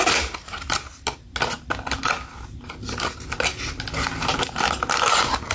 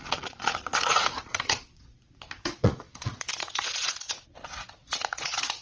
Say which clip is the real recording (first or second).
first